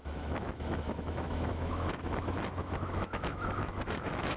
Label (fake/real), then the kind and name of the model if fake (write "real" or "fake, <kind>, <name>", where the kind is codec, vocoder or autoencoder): fake, autoencoder, DAC-VAE